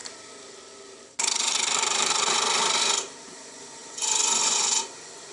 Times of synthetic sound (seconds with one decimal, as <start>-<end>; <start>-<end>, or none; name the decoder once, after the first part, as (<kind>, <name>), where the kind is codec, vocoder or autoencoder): 3.2-5.3 (vocoder, Vocos)